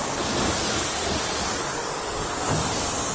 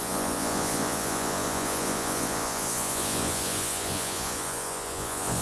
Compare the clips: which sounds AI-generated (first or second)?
second